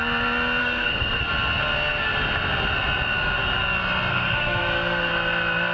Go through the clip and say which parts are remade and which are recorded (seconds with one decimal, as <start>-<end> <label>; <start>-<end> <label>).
0.0-0.6 recorded; 0.6-1.2 remade; 1.2-4.1 recorded; 4.1-5.1 remade; 5.1-5.7 recorded